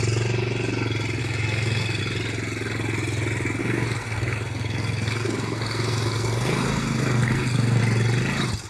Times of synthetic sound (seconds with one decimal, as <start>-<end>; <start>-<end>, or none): 1.2-2.0; 3.6-7.8